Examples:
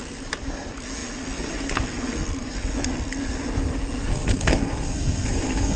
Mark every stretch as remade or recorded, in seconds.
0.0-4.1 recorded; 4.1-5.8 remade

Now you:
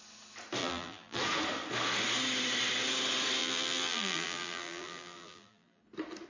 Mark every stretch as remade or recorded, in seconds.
0.0-0.6 recorded; 0.6-1.2 remade; 1.2-3.4 recorded; 3.4-5.8 remade; 5.8-6.3 recorded

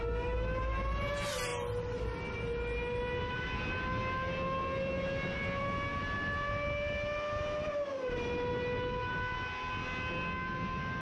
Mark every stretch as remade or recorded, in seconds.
0.0-11.0 recorded

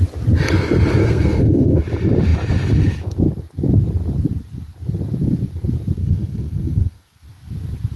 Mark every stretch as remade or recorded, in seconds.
0.0-1.0 recorded; 1.0-1.8 remade; 1.8-6.0 recorded; 6.0-7.2 remade; 7.2-8.0 recorded